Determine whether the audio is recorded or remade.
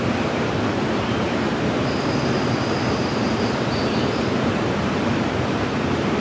remade